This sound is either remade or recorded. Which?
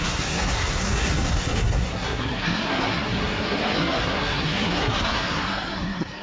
remade